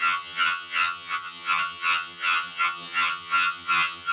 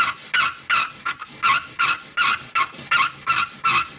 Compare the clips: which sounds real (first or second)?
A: second